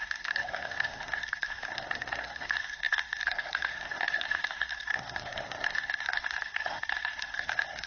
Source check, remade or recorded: remade